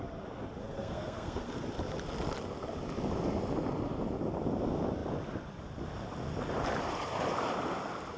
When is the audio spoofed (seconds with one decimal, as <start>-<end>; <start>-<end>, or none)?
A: 0.6-1.5